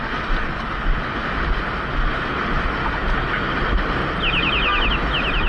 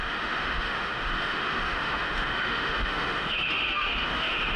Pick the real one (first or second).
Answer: first